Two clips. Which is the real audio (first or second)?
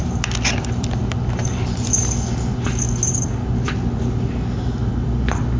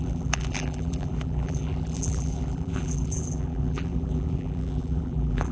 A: first